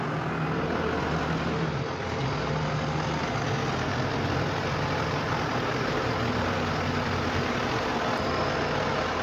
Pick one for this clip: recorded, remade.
recorded